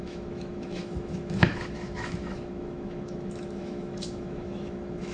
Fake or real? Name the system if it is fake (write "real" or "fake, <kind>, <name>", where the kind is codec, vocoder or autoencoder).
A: fake, autoencoder, DAC-VAE